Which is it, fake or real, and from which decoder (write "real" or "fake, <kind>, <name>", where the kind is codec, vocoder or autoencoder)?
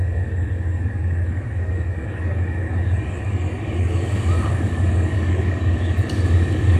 fake, codec, DAC